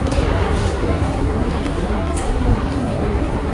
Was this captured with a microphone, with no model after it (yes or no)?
no